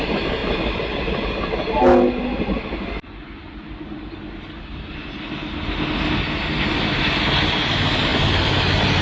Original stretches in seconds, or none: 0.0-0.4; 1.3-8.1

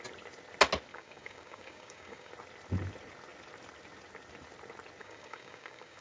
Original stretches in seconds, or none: 0.0-0.9; 2.3-5.0

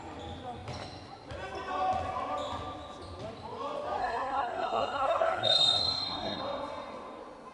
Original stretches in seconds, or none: 0.0-4.0; 6.4-7.5

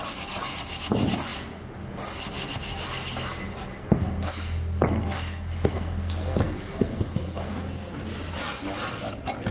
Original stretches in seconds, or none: 0.0-3.7; 8.0-9.5

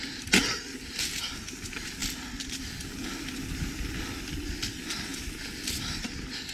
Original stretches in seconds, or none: 0.0-6.5

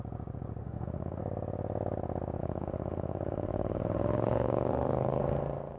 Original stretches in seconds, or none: 0.0-0.6; 1.2-2.4; 5.2-5.8

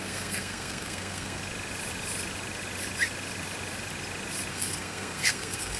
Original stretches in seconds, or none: 1.4-4.5